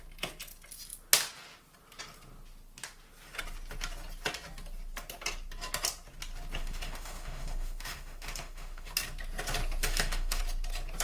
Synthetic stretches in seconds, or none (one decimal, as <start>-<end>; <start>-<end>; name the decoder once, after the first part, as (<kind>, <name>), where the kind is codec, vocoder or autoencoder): 6.6-8.9 (autoencoder, DAC-VAE); 9.8-10.4